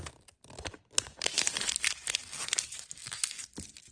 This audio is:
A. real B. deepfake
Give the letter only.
A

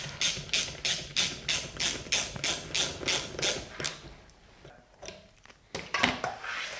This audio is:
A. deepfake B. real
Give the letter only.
B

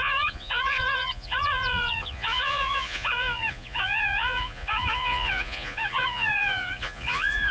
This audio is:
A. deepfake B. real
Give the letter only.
A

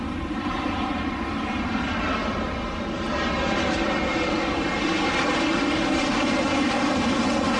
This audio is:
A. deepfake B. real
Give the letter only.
A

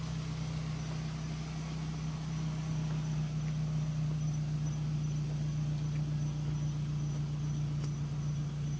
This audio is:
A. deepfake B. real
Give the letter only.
B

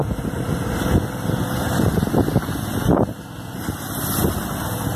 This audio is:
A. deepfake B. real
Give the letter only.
B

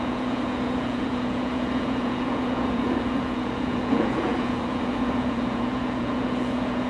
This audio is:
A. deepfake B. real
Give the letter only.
A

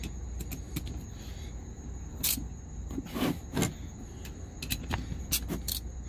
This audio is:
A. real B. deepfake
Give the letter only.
A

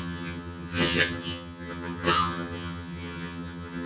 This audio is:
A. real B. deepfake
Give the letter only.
B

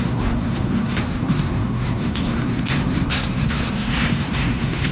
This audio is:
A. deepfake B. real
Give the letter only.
A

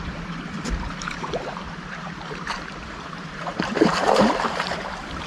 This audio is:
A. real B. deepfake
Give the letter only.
B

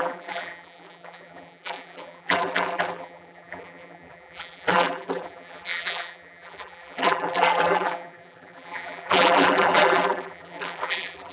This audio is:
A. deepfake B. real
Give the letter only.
A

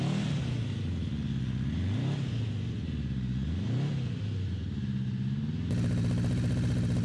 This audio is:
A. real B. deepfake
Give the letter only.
A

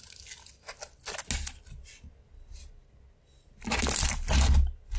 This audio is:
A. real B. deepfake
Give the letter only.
A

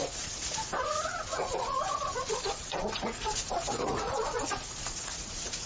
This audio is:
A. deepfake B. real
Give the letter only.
A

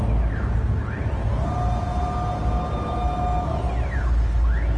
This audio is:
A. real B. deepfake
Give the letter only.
A